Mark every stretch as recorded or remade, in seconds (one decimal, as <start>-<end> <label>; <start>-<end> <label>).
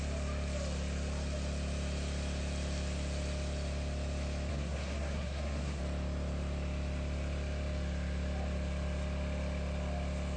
0.0-4.5 recorded; 4.5-5.8 remade; 5.8-10.4 recorded